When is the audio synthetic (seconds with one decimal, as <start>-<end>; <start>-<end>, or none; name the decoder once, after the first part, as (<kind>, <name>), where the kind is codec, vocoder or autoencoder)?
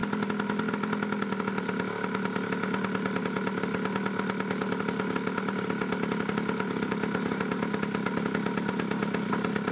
none